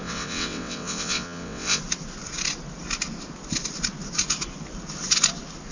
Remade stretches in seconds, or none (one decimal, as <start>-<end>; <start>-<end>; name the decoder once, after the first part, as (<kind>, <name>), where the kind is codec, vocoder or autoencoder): 0.0-1.8 (vocoder, WaveNeXt)